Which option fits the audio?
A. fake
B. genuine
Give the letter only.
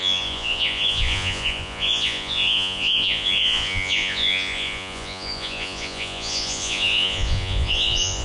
A